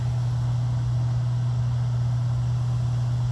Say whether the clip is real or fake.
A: real